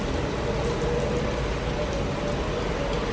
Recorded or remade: recorded